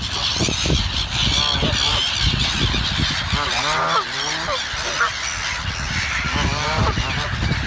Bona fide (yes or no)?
yes